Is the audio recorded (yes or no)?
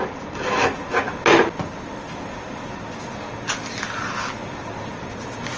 yes